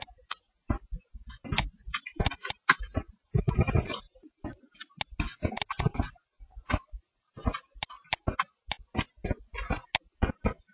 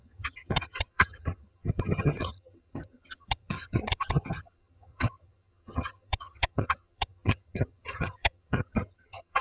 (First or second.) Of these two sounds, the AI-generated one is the second